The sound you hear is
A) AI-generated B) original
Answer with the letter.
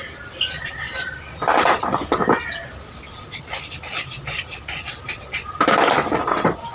B